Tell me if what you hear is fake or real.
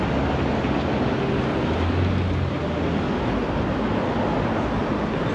real